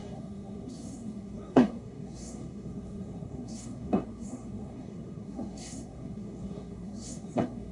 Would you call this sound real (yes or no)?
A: no